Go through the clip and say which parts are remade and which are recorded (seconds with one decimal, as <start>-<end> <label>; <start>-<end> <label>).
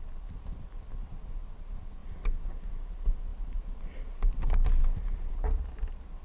0.0-6.2 recorded